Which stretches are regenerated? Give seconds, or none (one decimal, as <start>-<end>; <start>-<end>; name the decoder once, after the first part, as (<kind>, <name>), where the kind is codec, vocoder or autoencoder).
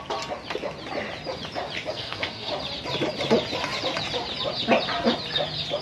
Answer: 1.9-2.5 (codec, SNAC)